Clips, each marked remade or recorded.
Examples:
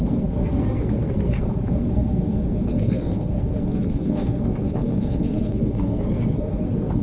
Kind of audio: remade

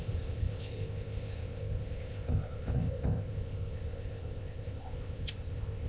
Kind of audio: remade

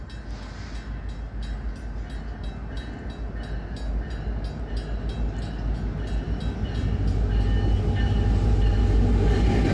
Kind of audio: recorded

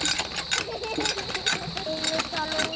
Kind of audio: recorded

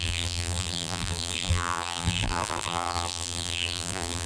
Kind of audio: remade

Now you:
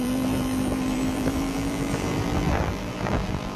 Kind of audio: remade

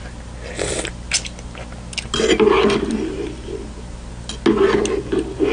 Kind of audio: recorded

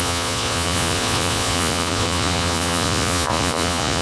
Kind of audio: remade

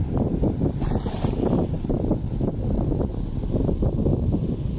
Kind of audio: recorded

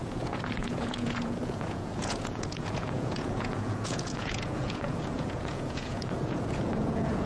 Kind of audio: remade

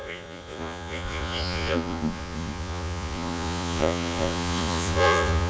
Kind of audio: remade